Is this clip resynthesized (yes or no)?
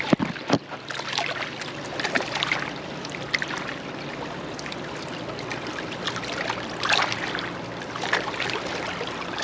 no